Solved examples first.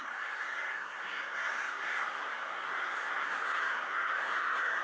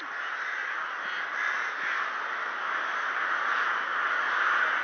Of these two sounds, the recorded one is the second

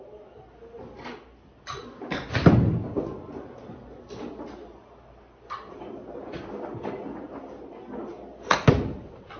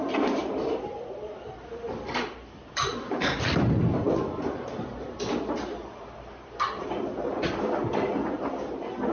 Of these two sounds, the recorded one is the first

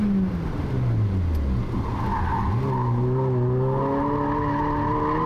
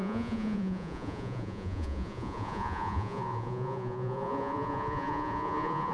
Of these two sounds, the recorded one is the first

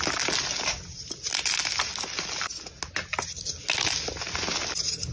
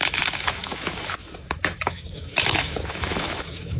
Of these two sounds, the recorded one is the first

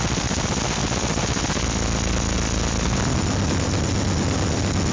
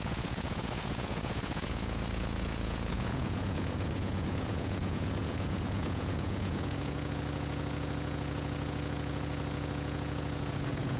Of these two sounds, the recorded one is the first